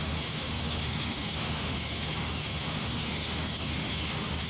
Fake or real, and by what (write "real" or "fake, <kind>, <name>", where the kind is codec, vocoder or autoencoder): fake, autoencoder, DAC-VAE